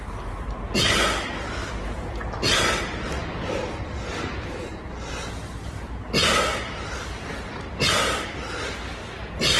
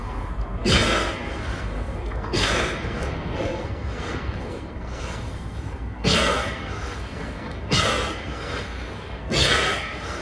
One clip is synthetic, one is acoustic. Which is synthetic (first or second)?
second